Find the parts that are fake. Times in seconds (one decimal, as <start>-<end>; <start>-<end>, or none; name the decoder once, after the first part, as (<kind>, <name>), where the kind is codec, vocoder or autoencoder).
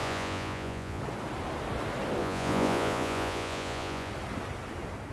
0.0-1.0 (vocoder, Vocos); 2.2-4.1